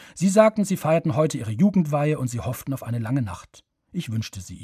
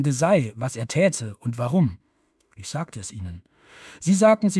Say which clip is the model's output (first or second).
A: second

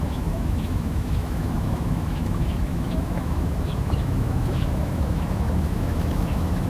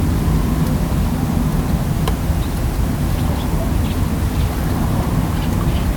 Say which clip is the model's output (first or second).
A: first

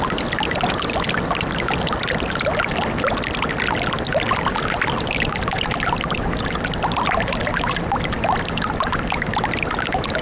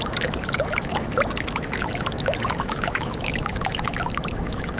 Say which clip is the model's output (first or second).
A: second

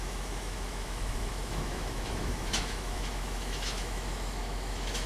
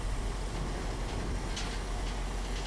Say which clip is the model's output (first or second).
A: first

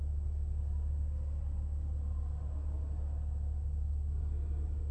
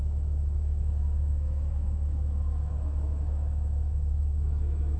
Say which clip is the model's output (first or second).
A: second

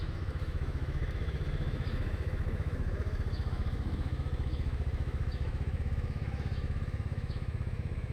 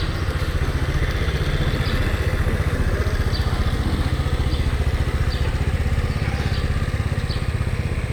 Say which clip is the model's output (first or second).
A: first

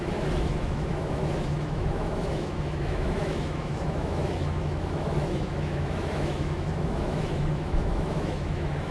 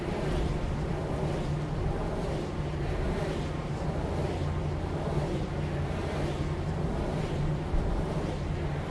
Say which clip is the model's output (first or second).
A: first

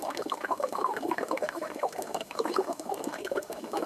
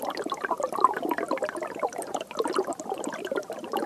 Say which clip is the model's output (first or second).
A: first